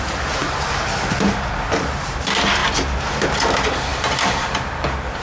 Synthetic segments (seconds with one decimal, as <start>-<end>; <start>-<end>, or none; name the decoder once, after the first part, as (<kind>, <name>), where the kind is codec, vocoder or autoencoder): 3.9-5.2 (vocoder, BigVGAN v2)